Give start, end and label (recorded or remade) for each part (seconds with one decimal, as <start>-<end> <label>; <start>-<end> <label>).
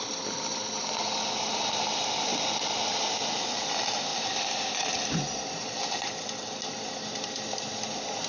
0.0-8.3 recorded